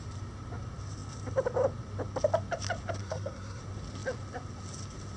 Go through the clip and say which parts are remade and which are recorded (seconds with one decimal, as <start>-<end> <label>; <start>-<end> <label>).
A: 0.0-3.0 recorded; 3.0-3.6 remade; 3.6-5.2 recorded